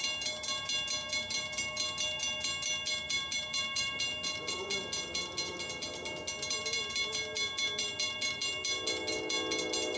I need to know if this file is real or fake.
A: real